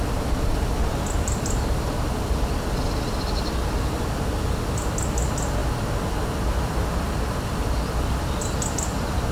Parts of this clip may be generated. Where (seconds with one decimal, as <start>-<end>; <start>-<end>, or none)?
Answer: none